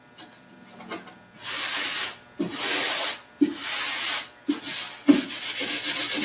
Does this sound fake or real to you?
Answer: real